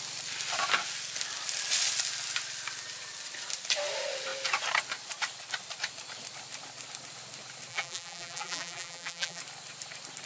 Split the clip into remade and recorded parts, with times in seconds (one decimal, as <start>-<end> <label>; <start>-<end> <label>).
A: 0.0-7.7 recorded; 7.7-9.4 remade; 9.4-10.3 recorded